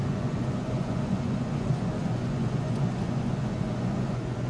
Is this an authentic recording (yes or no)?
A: no